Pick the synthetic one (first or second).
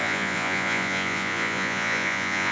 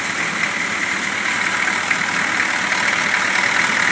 first